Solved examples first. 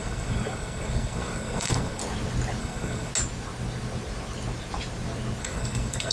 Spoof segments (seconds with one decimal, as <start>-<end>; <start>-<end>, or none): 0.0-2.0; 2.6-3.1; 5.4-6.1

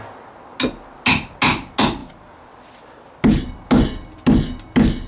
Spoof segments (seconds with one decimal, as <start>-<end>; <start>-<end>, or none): none

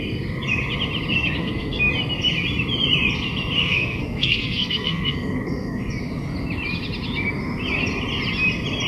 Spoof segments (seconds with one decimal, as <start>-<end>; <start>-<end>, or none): 1.4-1.9; 3.6-5.8

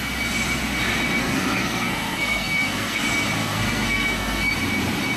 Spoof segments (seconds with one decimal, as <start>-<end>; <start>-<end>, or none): 1.2-3.0; 3.4-4.5

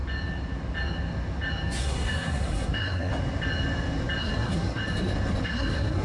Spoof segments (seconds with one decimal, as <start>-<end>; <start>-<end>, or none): 1.8-3.1; 4.2-4.8; 5.4-6.0

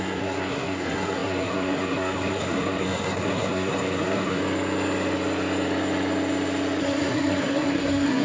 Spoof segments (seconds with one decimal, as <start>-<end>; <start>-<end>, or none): 0.0-4.4; 6.8-8.2

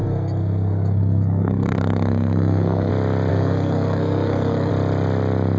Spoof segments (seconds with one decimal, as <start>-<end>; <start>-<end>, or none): 0.0-2.9; 3.3-4.7

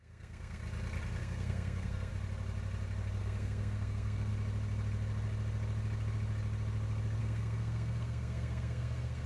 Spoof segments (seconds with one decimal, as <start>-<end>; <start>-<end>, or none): 0.0-0.6; 1.2-2.1; 3.2-4.3; 7.2-9.3